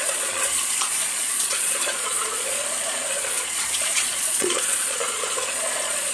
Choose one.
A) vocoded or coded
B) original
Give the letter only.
A